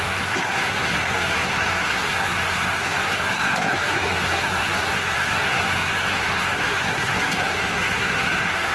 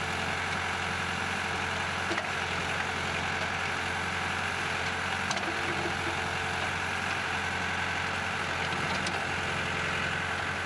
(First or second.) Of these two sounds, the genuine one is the second